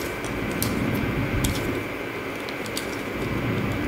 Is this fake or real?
real